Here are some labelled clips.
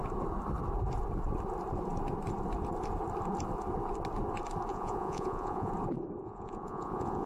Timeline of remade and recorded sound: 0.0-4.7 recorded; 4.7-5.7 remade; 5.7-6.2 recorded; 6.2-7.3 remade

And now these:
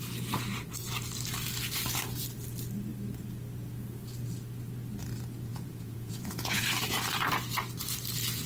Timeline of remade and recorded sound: 0.0-5.5 recorded; 5.5-6.6 remade; 6.6-8.5 recorded

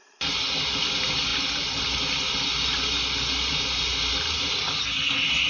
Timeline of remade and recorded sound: 0.0-5.5 recorded

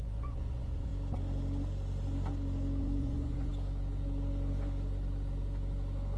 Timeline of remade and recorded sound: 0.0-0.9 remade; 0.9-2.8 recorded; 2.8-3.5 remade; 3.5-6.2 recorded

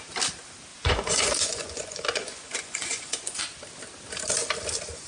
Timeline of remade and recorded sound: 0.0-0.7 recorded; 0.7-3.4 remade; 3.4-5.1 recorded